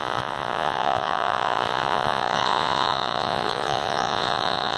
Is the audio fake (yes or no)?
yes